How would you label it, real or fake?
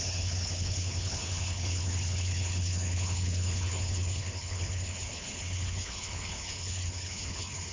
fake